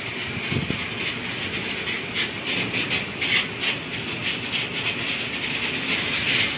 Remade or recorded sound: recorded